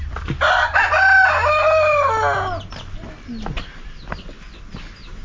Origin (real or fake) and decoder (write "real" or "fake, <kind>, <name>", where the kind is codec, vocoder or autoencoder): real